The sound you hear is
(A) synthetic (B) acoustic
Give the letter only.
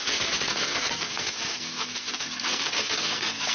A